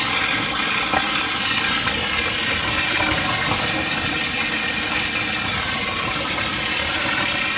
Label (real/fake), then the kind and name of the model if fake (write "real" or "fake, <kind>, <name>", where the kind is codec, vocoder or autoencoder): real